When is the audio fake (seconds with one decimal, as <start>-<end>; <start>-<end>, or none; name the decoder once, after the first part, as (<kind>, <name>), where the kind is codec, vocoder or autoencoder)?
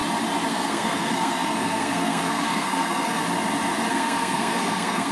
0.5-3.2 (codec, SNAC); 3.9-5.1